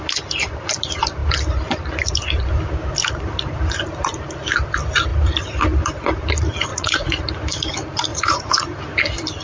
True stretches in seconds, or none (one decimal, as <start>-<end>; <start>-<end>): 0.0-6.7; 7.2-8.1; 8.8-9.4